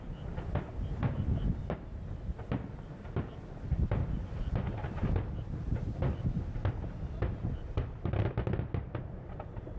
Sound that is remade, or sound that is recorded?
recorded